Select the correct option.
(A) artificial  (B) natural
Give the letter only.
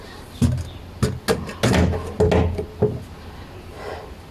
B